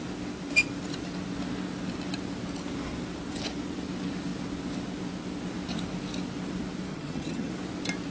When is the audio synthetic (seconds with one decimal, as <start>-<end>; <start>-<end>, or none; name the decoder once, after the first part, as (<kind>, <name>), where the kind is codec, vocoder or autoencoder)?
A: 6.9-7.5 (vocoder, HiFi-GAN)